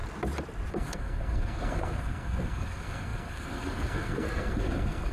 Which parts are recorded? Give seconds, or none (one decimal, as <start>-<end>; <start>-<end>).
0.0-0.7